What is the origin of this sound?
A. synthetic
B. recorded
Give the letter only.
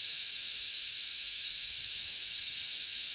A